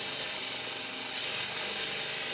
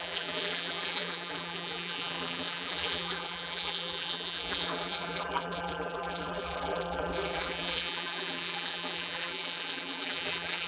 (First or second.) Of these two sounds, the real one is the first